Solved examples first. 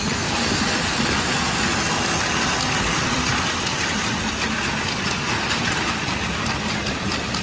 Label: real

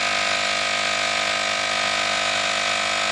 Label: real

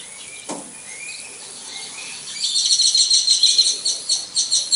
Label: real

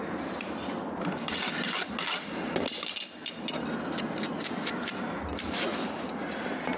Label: real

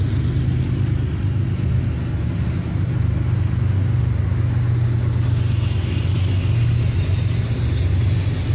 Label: real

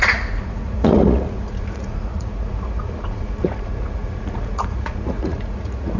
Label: fake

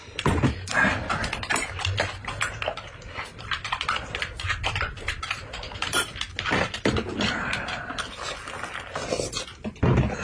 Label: real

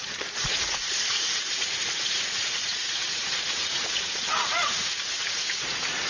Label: fake